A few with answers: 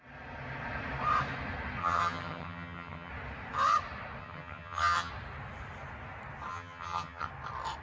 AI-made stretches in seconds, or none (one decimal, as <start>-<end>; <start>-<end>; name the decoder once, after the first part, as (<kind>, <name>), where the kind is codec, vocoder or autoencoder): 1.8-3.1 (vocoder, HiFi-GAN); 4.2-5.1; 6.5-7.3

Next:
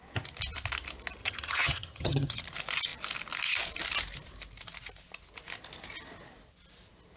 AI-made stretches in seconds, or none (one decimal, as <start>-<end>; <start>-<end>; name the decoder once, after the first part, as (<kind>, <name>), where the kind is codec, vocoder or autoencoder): 1.2-2.4 (vocoder, HiFi-GAN)

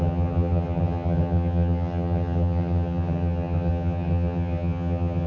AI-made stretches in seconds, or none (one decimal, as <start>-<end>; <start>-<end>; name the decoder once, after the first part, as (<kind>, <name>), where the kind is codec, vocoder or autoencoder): 0.0-5.3 (vocoder, HiFi-GAN)

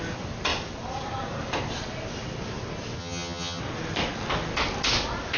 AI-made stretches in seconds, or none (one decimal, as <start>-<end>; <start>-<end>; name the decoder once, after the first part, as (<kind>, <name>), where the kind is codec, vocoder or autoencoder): 3.0-3.6 (vocoder, HiFi-GAN)

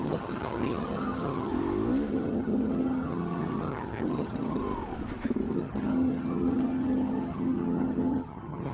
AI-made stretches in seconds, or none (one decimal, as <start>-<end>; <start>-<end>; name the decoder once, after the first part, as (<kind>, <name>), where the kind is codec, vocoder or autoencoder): 0.0-1.5 (vocoder, HiFi-GAN); 2.1-4.6; 5.5-8.7